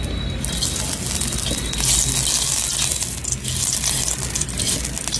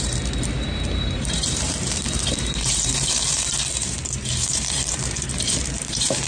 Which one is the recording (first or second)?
first